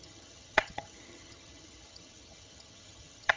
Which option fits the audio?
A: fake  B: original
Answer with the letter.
A